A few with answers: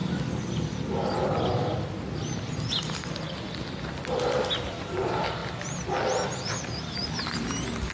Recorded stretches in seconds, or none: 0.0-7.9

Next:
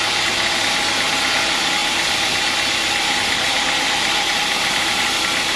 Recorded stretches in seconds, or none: 0.0-5.6

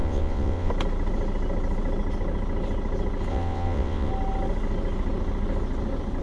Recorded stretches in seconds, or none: 0.7-3.3; 4.1-6.2

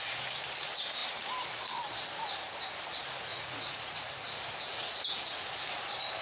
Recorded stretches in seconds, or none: 0.0-3.3; 4.1-4.7; 5.5-6.2

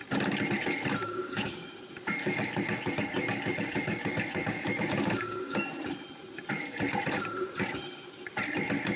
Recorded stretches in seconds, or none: 0.0-1.0; 1.7-2.2; 5.6-9.0